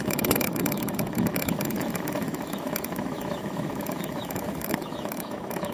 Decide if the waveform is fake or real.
fake